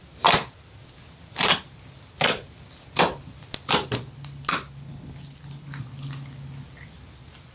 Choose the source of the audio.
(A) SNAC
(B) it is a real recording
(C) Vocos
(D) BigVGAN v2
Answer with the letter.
B